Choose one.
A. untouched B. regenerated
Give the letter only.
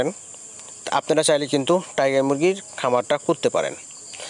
A